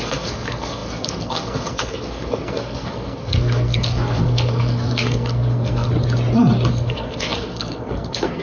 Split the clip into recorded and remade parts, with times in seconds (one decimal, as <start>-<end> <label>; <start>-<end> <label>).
0.0-5.9 remade; 5.9-6.7 recorded; 6.7-8.4 remade